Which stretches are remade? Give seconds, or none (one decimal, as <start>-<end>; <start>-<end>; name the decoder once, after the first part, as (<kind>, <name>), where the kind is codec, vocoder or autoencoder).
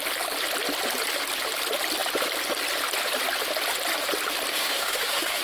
4.5-5.4 (autoencoder, DAC-VAE)